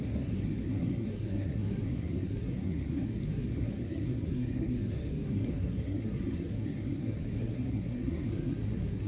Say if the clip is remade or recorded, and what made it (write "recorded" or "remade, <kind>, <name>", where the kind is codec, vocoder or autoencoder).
remade, codec, SNAC